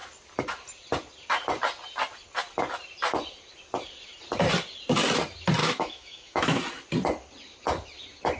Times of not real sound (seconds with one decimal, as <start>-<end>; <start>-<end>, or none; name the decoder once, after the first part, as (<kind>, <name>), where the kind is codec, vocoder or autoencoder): 5.6-6.6 (autoencoder, DAC-VAE)